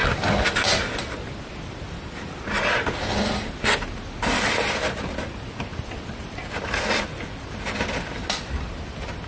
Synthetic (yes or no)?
no